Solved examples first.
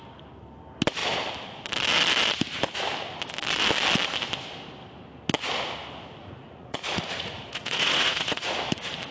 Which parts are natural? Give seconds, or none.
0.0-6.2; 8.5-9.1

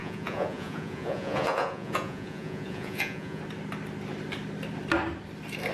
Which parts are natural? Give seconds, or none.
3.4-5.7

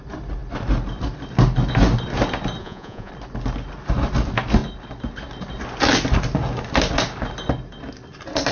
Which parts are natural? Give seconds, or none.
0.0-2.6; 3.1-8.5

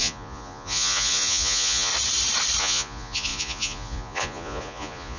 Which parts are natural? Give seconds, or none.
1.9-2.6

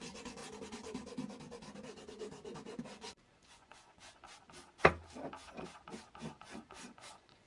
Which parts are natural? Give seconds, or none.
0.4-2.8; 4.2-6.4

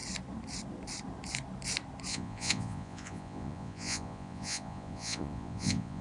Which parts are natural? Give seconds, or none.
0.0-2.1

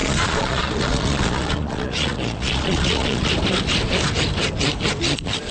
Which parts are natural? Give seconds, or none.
3.3-5.5

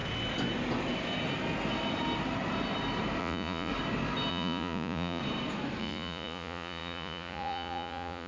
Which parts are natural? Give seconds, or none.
0.0-3.2; 3.7-4.3; 5.2-5.8